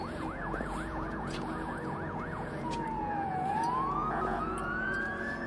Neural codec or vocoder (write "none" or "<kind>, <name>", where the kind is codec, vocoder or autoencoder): vocoder, Vocos